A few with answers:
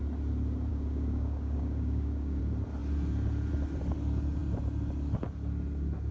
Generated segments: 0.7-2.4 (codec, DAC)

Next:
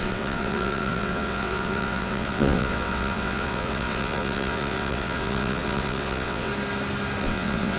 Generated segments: 0.0-6.5 (vocoder, WaveNeXt); 7.2-7.8

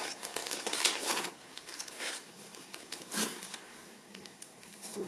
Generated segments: 0.0-5.1 (codec, SNAC)